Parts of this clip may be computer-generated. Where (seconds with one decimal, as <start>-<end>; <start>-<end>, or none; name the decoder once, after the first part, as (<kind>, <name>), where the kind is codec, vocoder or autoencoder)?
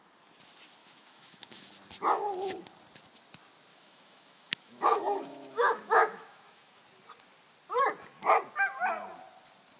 0.8-1.7 (autoencoder, DAC-VAE); 3.7-6.8